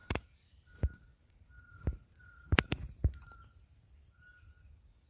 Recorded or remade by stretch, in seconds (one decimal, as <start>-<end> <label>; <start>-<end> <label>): 0.0-3.1 remade; 3.1-5.1 recorded